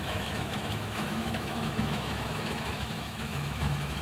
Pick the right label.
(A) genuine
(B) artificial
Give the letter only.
B